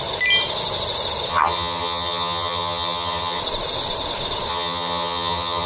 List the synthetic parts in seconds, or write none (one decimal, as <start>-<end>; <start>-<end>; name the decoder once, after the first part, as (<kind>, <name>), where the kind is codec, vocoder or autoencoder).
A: 1.3-3.4 (vocoder, HiFi-GAN); 4.5-5.7